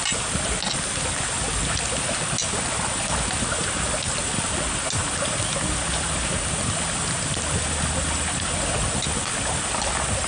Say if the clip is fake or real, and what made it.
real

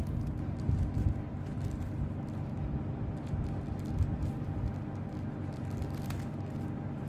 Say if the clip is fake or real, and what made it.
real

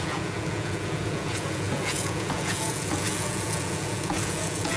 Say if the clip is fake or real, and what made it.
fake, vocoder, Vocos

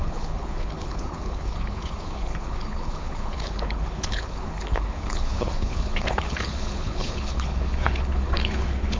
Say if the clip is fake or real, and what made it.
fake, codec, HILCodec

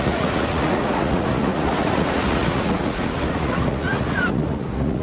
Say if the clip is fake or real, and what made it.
fake, vocoder, Vocos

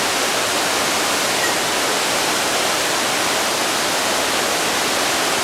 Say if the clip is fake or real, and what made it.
real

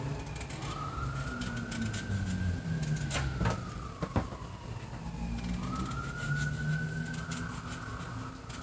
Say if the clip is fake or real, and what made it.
real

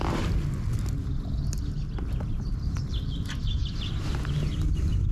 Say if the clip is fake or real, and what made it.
real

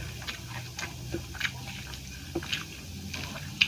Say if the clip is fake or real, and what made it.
real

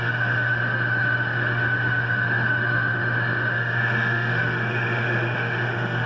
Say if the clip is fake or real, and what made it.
fake, autoencoder, DAC-VAE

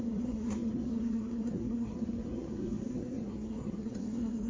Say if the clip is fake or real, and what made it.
fake, codec, SNAC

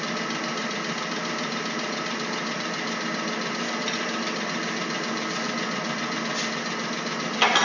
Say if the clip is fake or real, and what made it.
real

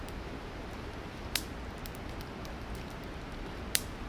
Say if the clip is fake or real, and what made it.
real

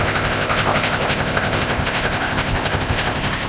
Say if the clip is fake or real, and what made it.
fake, codec, ZipCodec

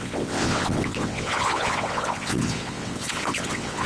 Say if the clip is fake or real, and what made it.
fake, vocoder, WaveNeXt